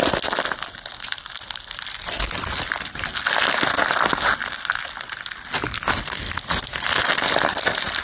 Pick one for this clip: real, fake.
real